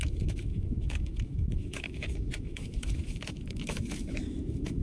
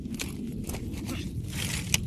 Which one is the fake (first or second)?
first